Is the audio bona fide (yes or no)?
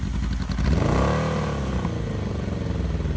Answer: yes